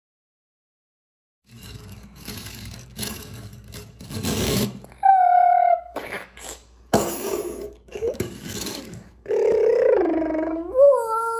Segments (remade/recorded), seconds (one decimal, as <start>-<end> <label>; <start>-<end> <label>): 0.0-11.4 remade